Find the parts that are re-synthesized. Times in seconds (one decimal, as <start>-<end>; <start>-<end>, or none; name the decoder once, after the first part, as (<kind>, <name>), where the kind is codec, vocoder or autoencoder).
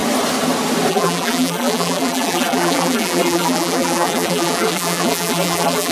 0.9-5.9 (vocoder, BigVGAN v2)